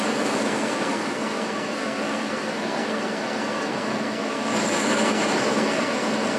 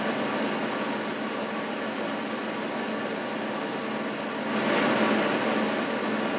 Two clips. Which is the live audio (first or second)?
second